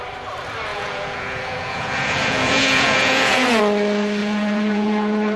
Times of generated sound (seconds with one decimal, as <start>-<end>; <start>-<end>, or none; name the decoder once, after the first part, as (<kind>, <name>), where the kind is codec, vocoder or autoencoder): 0.7-3.6 (vocoder, Vocos); 4.2-5.4